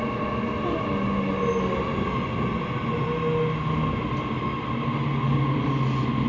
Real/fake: real